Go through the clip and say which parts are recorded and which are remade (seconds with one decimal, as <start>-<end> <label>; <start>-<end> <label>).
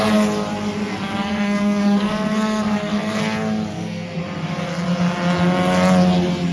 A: 0.0-0.9 recorded; 0.9-3.2 remade; 3.2-3.7 recorded; 3.7-4.2 remade; 4.2-6.5 recorded